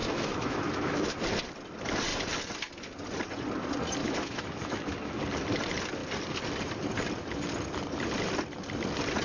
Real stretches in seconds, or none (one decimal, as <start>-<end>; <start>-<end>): 1.2-4.0; 5.2-9.2